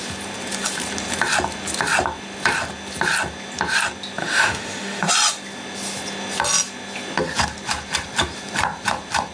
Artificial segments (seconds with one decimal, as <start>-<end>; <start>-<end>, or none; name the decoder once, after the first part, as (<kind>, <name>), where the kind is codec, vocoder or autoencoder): 4.2-5.1 (autoencoder, DAC-VAE)